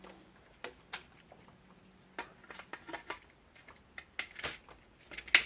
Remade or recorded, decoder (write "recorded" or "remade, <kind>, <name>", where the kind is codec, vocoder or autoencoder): recorded